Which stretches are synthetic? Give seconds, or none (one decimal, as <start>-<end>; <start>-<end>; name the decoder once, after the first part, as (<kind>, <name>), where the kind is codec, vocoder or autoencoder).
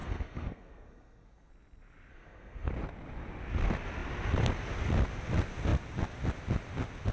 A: 0.0-1.5 (codec, SNAC); 2.1-2.7